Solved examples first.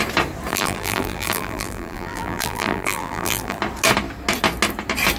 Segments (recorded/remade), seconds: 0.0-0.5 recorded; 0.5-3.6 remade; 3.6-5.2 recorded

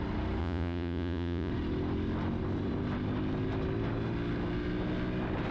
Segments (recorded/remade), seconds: 0.0-0.4 recorded; 0.4-1.5 remade; 1.5-5.5 recorded

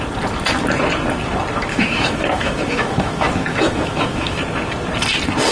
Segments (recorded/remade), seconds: 0.0-1.7 recorded; 1.7-4.4 remade; 4.4-5.5 recorded

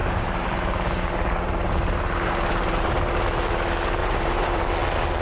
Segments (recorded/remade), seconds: 0.0-3.1 remade; 3.1-4.0 recorded; 4.0-4.7 remade; 4.7-5.2 recorded

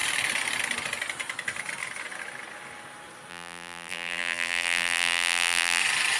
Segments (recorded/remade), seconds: 0.0-3.3 recorded; 3.3-5.8 remade; 5.8-6.2 recorded